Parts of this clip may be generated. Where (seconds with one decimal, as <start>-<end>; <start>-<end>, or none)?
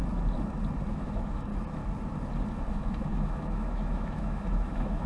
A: 0.9-1.5; 2.7-5.1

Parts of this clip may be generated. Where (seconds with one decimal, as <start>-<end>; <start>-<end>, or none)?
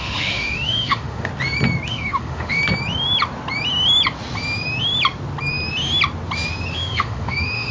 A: 0.0-1.3; 1.9-2.6; 6.7-7.7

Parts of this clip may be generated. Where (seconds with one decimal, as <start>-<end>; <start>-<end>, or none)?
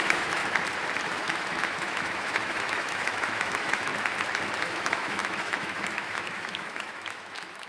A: 0.0-0.4; 1.1-3.9; 4.6-7.7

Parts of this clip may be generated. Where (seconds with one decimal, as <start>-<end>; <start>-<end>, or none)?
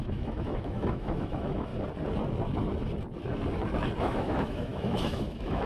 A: 0.0-1.7; 4.0-5.7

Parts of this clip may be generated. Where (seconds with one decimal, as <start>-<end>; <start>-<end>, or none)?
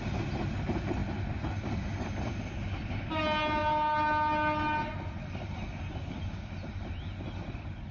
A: none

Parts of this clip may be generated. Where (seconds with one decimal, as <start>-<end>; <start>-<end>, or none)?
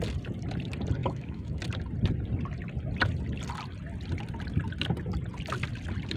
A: 1.0-1.6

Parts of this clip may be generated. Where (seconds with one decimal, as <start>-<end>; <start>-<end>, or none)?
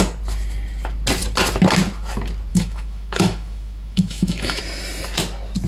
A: 2.5-4.6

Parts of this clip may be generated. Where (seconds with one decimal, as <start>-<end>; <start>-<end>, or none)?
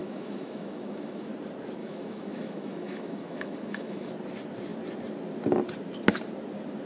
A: 0.0-1.3; 1.8-4.1